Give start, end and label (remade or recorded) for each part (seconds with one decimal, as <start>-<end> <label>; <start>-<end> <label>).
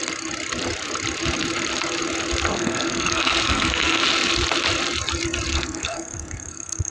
0.0-2.5 recorded; 2.5-4.0 remade; 4.0-5.5 recorded; 5.5-6.9 remade